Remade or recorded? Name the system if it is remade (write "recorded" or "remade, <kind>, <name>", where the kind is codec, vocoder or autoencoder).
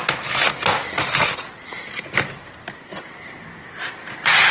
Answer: recorded